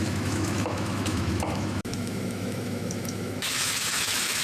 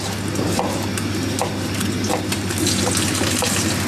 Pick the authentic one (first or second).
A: second